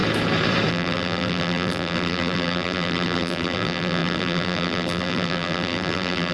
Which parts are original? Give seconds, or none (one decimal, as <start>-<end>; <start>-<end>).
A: 0.0-0.7